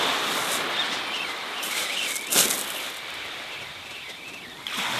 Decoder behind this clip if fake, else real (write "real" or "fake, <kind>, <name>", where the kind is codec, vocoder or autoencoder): real